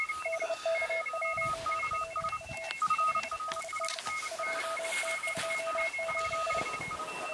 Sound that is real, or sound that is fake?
real